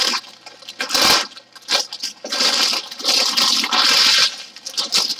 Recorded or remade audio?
recorded